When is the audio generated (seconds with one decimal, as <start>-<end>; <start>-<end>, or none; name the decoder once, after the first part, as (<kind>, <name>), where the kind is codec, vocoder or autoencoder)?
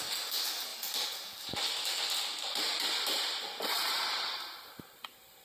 none